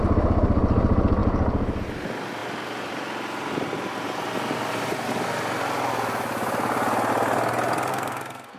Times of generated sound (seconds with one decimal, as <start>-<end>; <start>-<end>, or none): 7.9-8.6